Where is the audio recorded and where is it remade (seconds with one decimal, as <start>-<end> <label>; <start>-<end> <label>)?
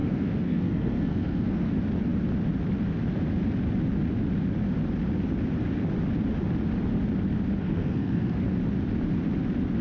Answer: 0.0-1.7 remade; 1.7-7.6 recorded; 7.6-8.4 remade; 8.4-9.8 recorded